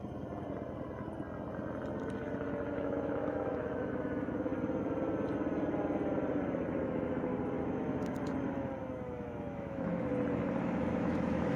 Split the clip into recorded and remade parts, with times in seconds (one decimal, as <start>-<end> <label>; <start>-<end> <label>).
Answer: 0.0-2.7 recorded; 2.7-4.5 remade; 4.5-6.8 recorded; 6.8-7.3 remade; 7.3-8.8 recorded; 8.8-10.1 remade; 10.1-10.6 recorded; 10.6-11.6 remade